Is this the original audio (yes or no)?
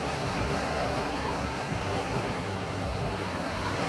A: no